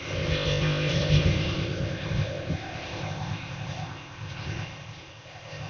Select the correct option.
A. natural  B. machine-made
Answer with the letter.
B